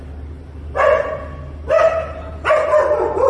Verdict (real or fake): real